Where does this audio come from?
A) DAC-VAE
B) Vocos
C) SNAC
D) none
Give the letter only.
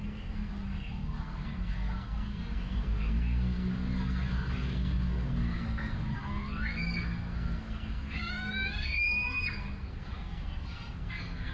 C